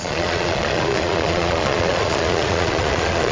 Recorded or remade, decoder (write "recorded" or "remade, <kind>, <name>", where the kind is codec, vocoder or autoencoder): remade, vocoder, Vocos